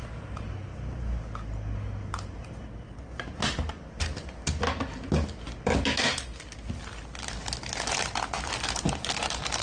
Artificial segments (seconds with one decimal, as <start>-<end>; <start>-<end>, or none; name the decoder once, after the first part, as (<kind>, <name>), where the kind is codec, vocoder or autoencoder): none